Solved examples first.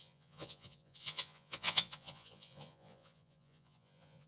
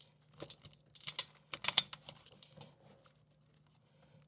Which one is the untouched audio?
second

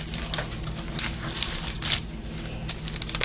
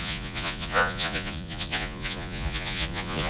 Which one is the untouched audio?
first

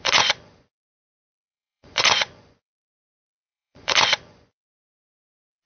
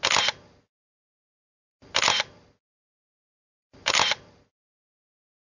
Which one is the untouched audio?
second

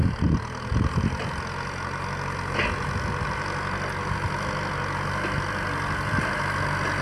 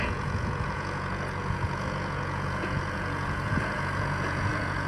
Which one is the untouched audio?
first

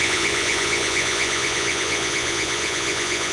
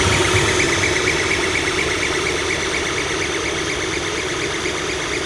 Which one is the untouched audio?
second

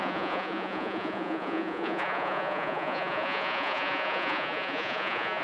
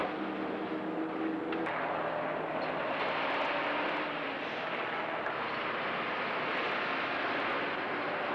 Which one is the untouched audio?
second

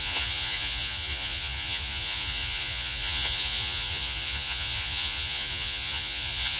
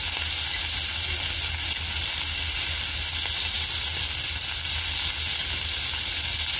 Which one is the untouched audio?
second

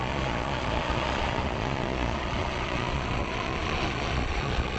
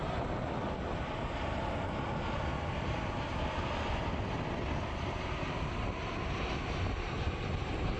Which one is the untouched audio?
second